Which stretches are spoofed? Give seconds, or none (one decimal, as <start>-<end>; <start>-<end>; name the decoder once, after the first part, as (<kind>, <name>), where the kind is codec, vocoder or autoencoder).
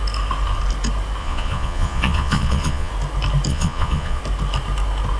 1.2-2.9 (vocoder, Vocos); 3.5-4.2